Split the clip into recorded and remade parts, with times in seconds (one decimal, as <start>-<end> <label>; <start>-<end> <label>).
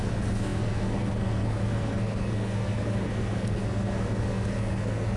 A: 0.0-5.2 remade